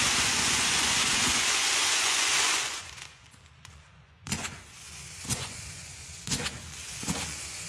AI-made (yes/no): yes